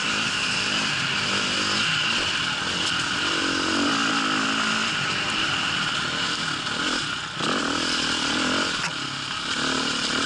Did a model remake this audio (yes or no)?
no